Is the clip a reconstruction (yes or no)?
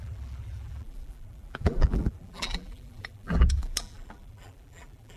yes